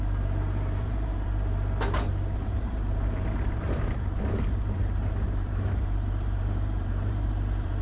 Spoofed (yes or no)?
yes